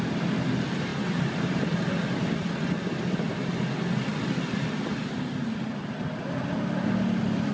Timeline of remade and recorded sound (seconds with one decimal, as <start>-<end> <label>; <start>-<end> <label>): 0.0-0.9 recorded; 0.9-1.9 remade; 1.9-7.5 recorded